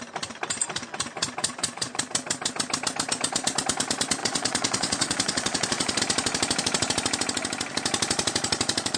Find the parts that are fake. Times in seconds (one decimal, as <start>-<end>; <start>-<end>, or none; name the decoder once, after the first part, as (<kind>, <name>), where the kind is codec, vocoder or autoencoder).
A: 1.4-2.0 (vocoder, Vocos); 4.2-6.0